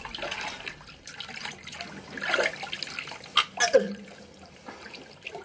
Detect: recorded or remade recorded